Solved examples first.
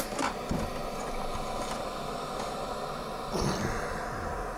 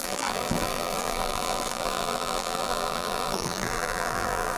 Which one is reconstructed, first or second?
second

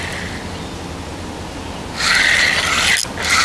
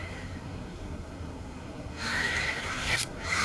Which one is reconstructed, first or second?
second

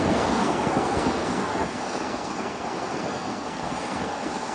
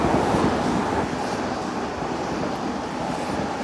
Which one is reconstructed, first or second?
first